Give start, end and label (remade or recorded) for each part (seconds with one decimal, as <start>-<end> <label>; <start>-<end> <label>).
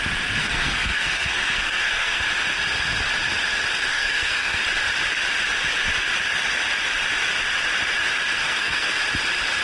0.0-0.4 recorded; 0.4-2.2 remade; 2.2-3.9 recorded; 3.9-4.6 remade; 4.6-8.4 recorded; 8.4-8.9 remade; 8.9-9.6 recorded